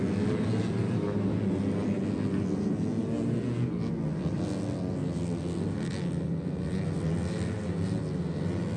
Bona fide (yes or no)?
yes